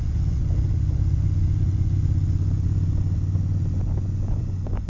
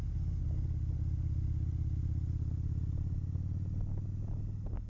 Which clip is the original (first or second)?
second